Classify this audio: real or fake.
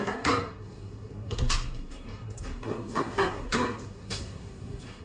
fake